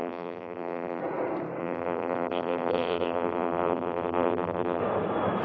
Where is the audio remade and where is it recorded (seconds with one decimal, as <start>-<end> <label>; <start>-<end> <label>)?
0.0-1.0 remade; 1.0-1.6 recorded; 1.6-4.8 remade; 4.8-5.4 recorded